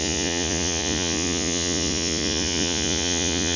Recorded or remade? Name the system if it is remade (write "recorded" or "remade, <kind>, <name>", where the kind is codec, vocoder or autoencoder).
remade, vocoder, Vocos